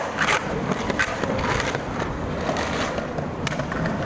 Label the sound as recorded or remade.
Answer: remade